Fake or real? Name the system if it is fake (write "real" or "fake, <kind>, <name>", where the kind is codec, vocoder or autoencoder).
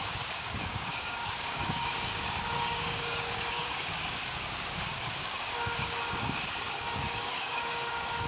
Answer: fake, codec, DAC